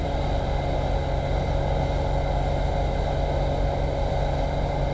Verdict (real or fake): real